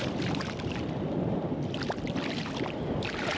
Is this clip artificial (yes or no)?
no